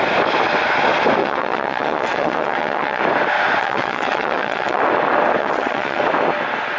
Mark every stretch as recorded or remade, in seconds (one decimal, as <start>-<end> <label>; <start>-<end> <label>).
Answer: 0.0-1.2 recorded; 1.2-3.0 remade; 3.0-3.6 recorded; 3.6-4.8 remade; 4.8-5.4 recorded; 5.4-6.0 remade; 6.0-6.8 recorded